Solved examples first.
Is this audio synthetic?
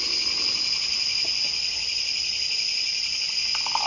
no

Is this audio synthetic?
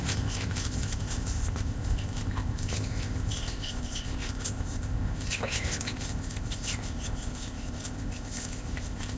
yes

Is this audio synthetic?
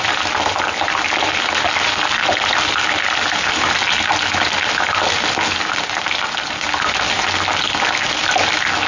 no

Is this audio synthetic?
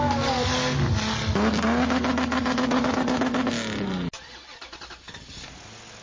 no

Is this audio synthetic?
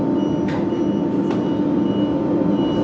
no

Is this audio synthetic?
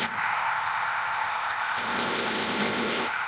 yes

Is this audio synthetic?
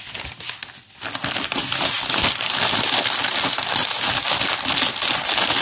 no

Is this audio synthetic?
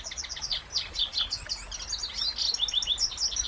no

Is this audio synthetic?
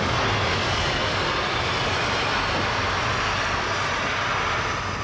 no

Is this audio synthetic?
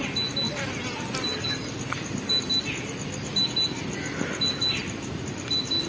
no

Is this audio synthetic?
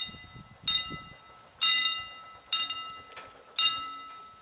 no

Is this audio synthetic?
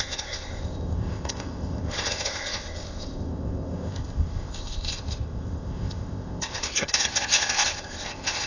yes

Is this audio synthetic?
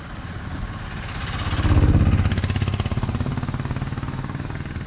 no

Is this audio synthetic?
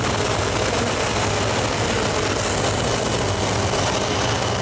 no